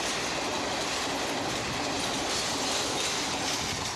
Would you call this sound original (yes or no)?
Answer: yes